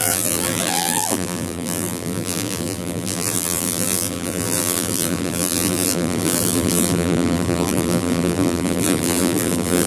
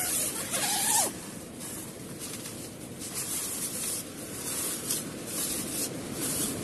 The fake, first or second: first